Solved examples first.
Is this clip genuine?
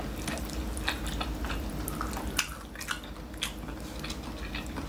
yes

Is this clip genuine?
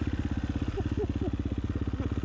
yes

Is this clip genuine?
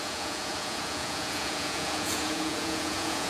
no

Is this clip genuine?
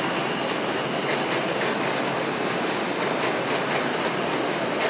yes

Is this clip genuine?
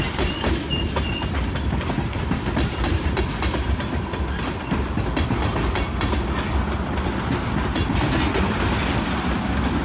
yes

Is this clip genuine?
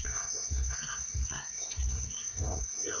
no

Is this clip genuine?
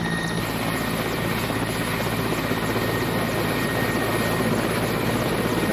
yes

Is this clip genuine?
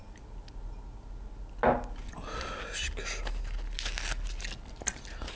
yes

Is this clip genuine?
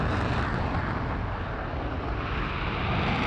yes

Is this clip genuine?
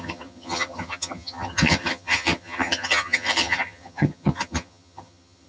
no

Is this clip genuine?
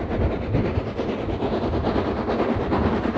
yes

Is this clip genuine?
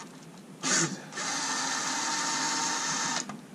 yes